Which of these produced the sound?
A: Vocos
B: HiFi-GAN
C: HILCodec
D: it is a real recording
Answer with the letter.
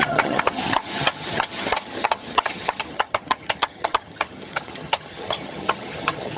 B